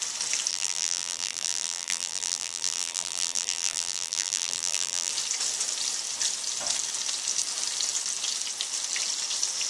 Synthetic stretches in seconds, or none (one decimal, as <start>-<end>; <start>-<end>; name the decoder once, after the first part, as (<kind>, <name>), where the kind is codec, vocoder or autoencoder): 0.5-5.1 (vocoder, BigVGAN v2)